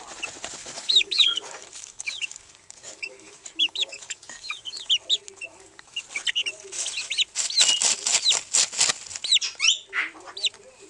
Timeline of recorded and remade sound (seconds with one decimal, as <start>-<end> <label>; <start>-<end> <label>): 0.0-0.6 recorded; 0.6-4.9 remade; 4.9-5.5 recorded; 5.5-6.0 remade; 6.0-10.9 recorded

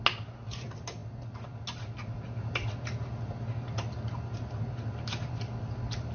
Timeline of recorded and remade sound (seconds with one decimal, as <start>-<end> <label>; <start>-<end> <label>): 0.0-6.1 recorded

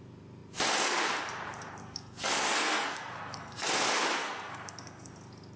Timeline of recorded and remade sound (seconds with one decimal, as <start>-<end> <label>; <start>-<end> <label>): 0.0-1.8 recorded; 1.8-3.7 remade; 3.7-4.2 recorded; 4.2-5.1 remade; 5.1-5.6 recorded